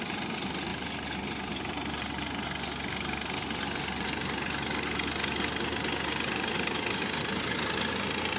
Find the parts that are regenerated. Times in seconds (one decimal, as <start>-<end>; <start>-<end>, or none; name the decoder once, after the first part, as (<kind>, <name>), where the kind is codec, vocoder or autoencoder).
none